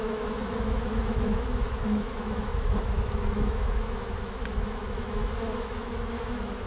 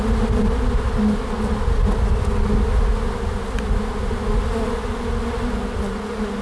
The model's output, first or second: first